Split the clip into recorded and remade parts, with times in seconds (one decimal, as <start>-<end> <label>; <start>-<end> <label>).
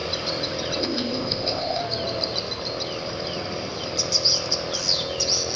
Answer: 0.0-0.8 recorded; 0.8-1.8 remade; 1.8-5.6 recorded